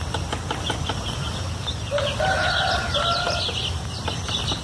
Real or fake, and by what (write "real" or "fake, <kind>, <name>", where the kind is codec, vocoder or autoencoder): real